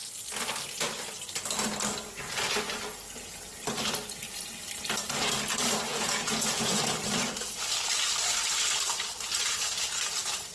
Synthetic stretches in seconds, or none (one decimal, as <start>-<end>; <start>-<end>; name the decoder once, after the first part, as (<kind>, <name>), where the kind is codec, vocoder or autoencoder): 5.9-6.8 (vocoder, Vocos)